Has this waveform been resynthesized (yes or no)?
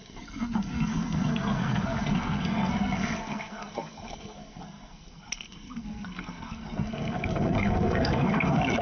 yes